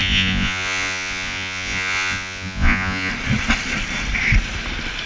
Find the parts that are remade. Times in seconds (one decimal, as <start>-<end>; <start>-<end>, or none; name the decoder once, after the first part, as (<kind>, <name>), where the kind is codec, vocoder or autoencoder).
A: 0.0-3.1 (vocoder, Vocos)